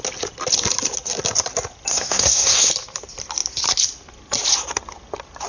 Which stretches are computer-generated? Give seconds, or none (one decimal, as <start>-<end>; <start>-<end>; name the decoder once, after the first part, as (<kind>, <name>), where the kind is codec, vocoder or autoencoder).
1.9-2.7 (codec, SNAC)